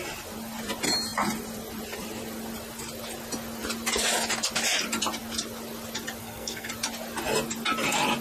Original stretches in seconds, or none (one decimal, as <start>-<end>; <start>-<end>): 0.0-6.2; 6.7-8.2